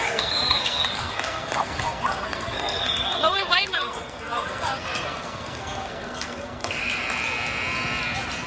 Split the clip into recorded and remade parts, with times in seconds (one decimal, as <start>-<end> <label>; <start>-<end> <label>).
0.0-6.8 remade; 6.8-8.5 recorded